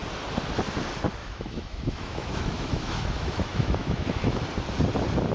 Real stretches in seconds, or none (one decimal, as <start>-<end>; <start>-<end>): 0.0-1.2; 4.4-5.3